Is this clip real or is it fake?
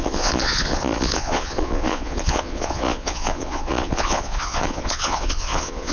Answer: fake